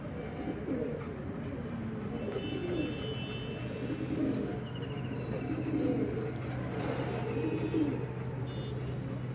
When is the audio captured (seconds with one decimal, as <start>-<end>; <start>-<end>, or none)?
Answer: 0.0-9.3